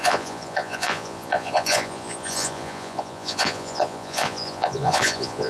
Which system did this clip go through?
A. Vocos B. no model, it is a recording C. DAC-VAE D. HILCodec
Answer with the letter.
A